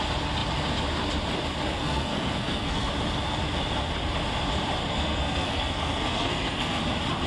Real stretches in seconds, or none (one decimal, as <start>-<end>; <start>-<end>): 0.0-1.7; 2.9-4.8; 6.8-7.3